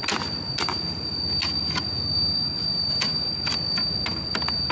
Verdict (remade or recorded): recorded